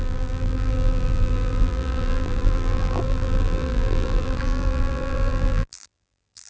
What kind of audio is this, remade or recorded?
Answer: remade